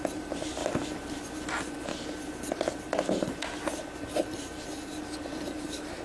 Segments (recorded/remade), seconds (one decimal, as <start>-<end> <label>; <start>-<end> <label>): 0.0-0.6 remade; 0.6-1.5 recorded; 1.5-1.9 remade; 1.9-5.4 recorded; 5.4-6.0 remade